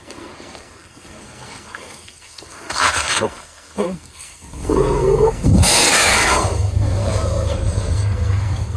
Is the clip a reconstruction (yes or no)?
yes